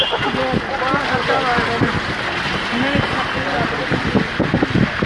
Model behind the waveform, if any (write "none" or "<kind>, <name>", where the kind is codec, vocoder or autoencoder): none